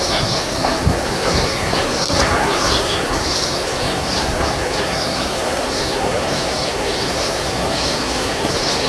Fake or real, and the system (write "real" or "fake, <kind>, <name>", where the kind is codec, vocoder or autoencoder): fake, codec, SNAC